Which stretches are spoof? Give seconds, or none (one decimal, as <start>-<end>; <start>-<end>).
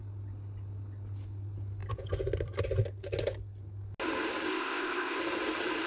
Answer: 4.5-5.2